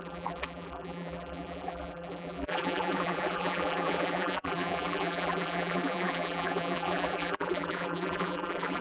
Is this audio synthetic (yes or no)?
yes